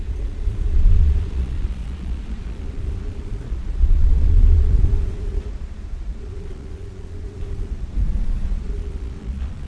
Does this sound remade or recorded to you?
remade